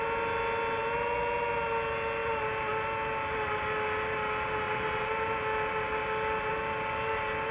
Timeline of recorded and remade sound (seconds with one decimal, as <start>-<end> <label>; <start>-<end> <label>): 0.0-7.5 recorded